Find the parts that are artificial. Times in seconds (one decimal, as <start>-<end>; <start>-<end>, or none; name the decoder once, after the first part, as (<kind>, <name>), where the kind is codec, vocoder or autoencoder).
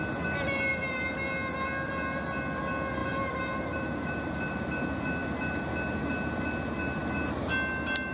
3.0-4.7 (vocoder, BigVGAN v2)